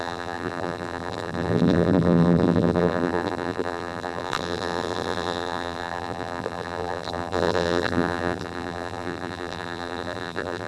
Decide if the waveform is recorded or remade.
remade